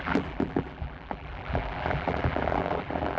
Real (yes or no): no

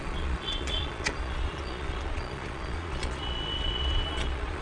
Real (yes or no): no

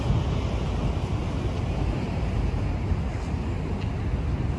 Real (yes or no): yes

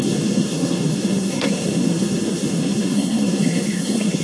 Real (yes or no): no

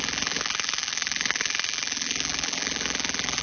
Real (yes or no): no